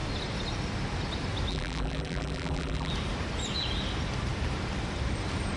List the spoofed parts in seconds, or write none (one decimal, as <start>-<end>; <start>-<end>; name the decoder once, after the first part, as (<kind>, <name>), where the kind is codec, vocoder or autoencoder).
1.5-2.9 (vocoder, BigVGAN v2)